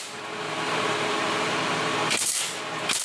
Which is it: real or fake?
real